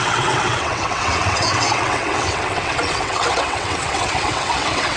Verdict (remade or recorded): remade